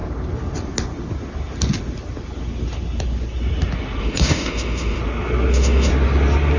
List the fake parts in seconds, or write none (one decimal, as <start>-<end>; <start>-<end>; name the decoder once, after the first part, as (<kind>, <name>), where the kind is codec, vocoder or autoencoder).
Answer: 4.0-5.0 (autoencoder, DAC-VAE); 5.5-5.9